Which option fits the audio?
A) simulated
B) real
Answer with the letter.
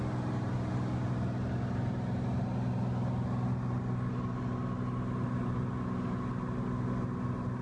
B